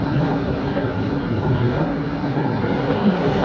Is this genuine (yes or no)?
no